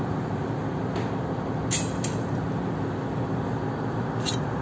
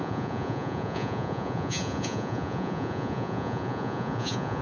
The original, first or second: first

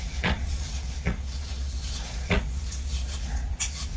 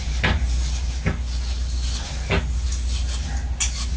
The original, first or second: second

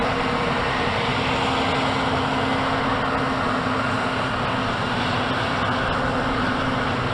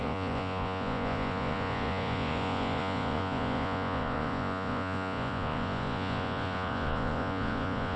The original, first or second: first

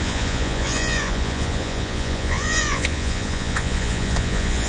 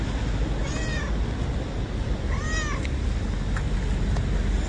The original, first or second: second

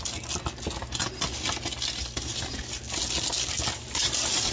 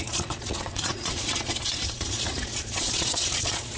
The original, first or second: first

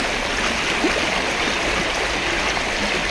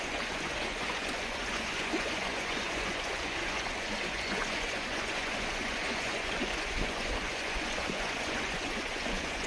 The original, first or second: first